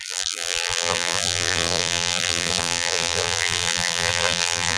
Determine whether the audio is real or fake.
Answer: fake